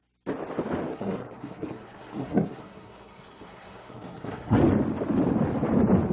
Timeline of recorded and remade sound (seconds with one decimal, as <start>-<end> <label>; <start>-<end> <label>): 0.0-0.9 recorded; 0.9-4.6 remade; 4.6-6.1 recorded

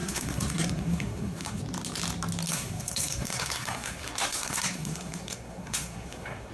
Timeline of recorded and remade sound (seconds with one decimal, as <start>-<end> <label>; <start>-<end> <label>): 0.0-1.6 remade; 1.6-2.5 recorded; 2.5-6.5 remade

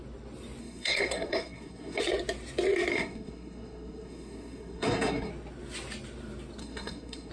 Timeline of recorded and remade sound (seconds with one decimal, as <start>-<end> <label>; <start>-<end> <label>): 0.0-0.6 recorded; 0.6-2.0 remade; 2.0-2.9 recorded; 2.9-5.3 remade; 5.3-6.6 recorded; 6.6-7.3 remade